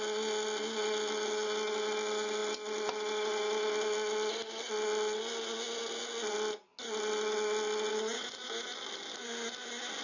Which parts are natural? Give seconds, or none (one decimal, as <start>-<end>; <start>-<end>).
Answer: 0.0-10.0